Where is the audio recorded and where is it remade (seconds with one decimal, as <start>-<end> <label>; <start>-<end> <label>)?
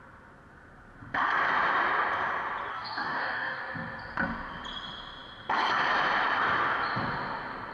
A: 0.0-2.7 recorded; 2.7-3.6 remade; 3.6-7.7 recorded